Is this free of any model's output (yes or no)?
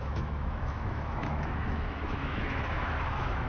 no